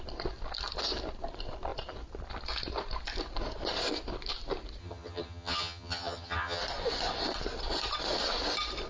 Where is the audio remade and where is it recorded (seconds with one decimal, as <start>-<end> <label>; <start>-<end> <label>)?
0.0-4.8 recorded; 4.8-6.6 remade; 6.6-8.9 recorded